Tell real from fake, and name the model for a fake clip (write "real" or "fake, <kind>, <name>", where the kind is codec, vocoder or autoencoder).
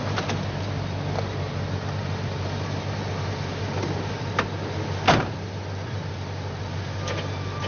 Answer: real